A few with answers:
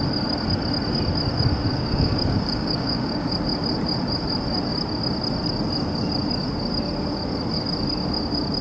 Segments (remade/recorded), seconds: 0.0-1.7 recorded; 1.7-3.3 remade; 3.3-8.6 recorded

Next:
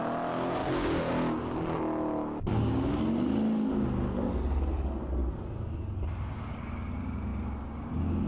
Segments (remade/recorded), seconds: 0.0-0.6 recorded; 0.6-1.1 remade; 1.1-2.5 recorded; 2.5-3.0 remade; 3.0-8.3 recorded

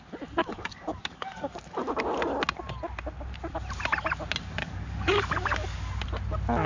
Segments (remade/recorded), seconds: 0.0-0.4 recorded; 0.4-2.0 remade; 2.0-4.6 recorded; 4.6-6.0 remade; 6.0-6.7 recorded

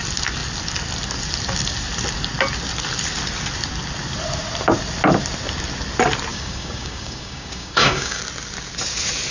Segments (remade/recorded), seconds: 0.0-6.3 recorded; 6.3-8.2 remade; 8.2-9.3 recorded

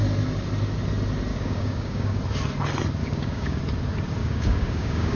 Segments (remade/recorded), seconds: 0.0-1.3 recorded; 1.3-2.2 remade; 2.2-3.0 recorded; 3.0-3.6 remade; 3.6-4.2 recorded; 4.2-5.2 remade

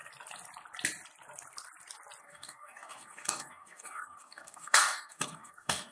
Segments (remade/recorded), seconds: 0.0-2.2 recorded; 2.2-5.9 remade